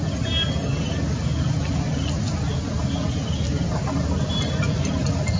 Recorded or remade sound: recorded